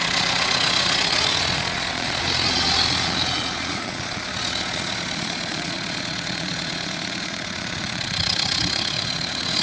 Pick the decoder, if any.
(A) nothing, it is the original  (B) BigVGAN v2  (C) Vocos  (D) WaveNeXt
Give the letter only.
C